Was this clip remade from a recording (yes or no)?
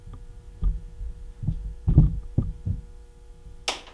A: no